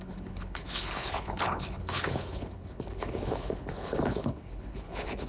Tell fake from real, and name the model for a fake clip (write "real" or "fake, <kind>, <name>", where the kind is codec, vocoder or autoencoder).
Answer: fake, codec, HILCodec